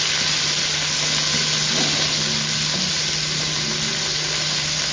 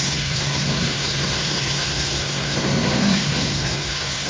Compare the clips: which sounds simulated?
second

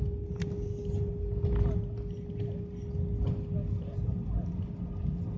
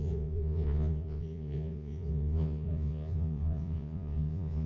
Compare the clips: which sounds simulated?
second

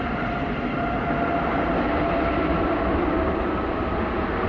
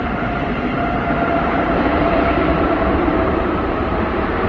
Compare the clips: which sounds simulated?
second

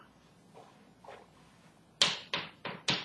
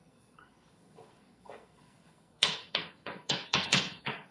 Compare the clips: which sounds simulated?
second